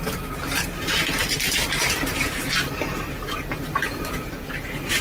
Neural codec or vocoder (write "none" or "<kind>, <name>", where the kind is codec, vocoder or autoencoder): vocoder, BigVGAN v2